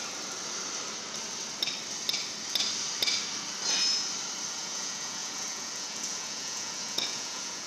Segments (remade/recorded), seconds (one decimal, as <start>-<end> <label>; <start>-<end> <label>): 0.0-4.5 recorded; 4.5-7.7 remade